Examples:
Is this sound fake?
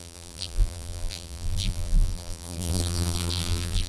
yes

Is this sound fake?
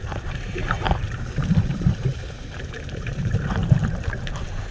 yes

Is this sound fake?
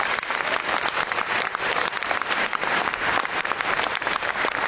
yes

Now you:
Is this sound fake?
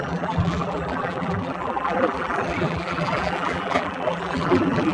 yes